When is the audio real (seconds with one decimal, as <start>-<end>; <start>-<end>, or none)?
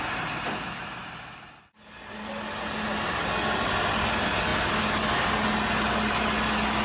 0.0-1.0; 2.3-6.8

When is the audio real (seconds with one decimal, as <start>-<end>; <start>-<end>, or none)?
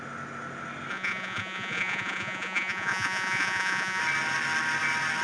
0.0-0.9; 4.0-5.2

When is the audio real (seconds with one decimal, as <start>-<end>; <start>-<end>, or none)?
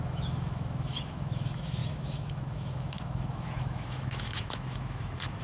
none